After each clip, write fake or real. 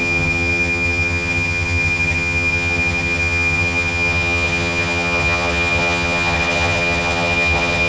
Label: fake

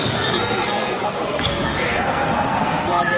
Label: fake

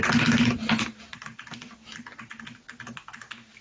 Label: real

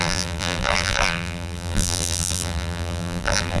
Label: fake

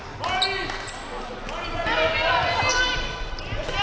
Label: real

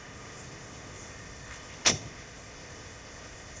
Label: fake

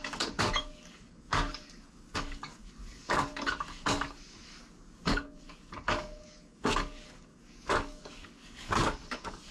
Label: fake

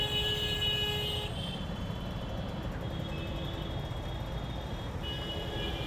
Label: real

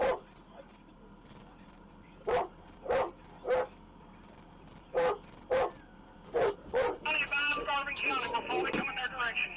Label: fake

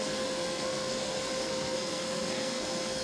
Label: fake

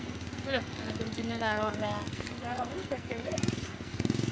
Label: fake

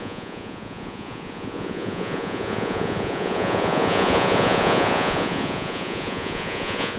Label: fake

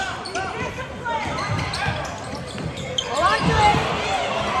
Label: fake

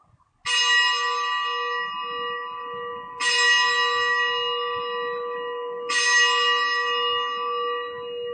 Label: real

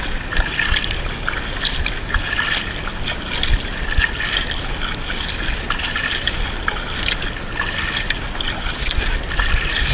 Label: real